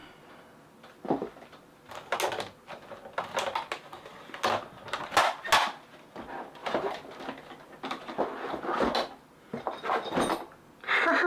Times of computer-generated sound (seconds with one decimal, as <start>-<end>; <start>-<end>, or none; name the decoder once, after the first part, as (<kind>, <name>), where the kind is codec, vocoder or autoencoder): none